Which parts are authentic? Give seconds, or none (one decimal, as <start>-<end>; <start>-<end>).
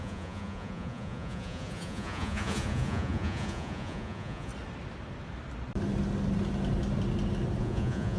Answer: 4.5-7.6